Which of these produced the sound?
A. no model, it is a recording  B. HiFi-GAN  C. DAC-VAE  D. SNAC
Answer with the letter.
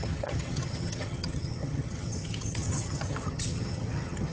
B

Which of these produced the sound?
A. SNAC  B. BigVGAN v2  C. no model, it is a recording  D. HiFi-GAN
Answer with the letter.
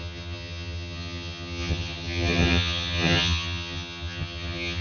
D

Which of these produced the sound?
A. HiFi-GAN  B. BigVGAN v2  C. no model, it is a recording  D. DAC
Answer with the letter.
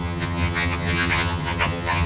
A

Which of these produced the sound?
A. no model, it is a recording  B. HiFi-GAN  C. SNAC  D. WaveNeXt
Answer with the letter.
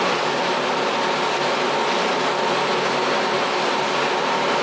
A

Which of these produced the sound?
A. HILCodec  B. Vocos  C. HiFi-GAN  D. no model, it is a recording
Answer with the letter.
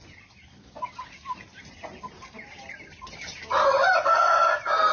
D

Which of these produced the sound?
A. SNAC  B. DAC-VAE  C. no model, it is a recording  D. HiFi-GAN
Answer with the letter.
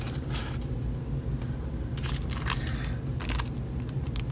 C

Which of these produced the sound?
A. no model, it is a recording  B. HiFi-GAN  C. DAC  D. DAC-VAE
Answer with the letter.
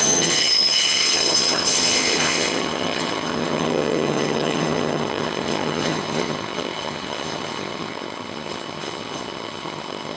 B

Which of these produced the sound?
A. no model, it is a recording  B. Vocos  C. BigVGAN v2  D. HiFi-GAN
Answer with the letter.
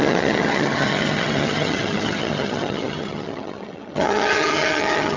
D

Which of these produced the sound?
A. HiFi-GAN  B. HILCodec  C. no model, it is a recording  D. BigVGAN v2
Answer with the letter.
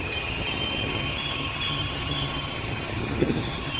A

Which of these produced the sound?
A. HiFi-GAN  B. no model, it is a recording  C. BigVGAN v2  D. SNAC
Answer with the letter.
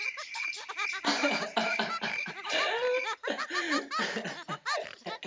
B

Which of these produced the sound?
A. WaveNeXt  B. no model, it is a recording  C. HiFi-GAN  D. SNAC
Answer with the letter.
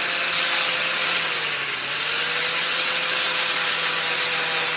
B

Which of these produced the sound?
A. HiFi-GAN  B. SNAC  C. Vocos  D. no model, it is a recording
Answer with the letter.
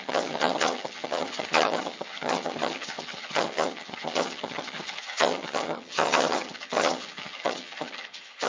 A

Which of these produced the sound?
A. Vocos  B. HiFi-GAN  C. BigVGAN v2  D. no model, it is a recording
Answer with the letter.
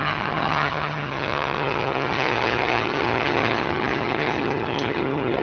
B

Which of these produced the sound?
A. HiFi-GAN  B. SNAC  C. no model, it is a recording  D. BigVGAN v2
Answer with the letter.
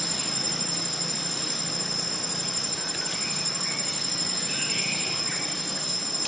C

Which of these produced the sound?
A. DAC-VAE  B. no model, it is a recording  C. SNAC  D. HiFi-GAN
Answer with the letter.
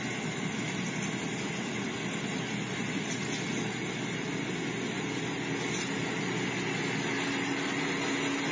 B